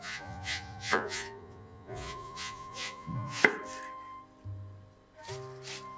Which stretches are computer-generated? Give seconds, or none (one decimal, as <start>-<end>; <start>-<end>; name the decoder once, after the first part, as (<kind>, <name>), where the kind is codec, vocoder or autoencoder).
0.0-3.4 (vocoder, Vocos)